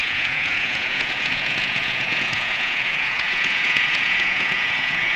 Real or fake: fake